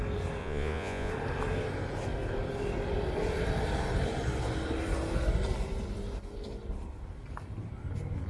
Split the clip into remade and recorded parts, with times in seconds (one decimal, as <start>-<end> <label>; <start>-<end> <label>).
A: 0.0-0.4 recorded; 0.4-1.1 remade; 1.1-8.3 recorded